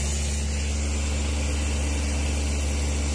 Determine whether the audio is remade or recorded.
recorded